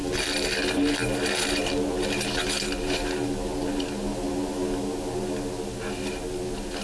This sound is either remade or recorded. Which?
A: recorded